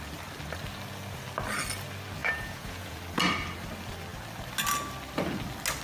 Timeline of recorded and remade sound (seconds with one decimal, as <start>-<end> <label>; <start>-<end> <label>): 0.0-2.2 recorded; 2.2-3.0 remade; 3.0-5.8 recorded